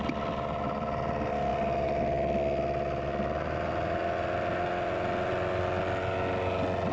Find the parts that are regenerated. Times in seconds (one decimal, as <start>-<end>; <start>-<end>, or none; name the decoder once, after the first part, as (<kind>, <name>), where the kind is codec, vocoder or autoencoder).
none